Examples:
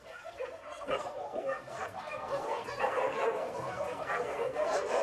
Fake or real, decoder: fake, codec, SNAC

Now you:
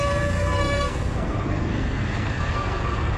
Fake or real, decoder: fake, codec, SNAC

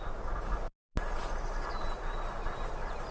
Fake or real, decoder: real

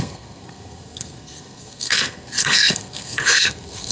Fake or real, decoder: fake, codec, SNAC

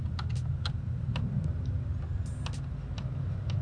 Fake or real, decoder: real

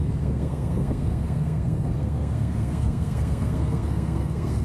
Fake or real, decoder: fake, codec, SNAC